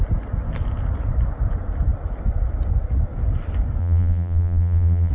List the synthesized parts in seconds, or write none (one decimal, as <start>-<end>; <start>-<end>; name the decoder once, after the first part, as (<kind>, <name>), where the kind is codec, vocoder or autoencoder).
3.8-5.1 (vocoder, BigVGAN v2)